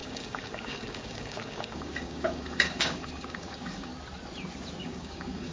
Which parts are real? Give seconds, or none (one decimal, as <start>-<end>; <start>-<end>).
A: 3.9-4.8